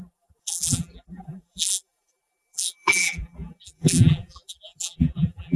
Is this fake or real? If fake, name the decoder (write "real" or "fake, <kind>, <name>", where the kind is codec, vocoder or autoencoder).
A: fake, vocoder, BigVGAN v2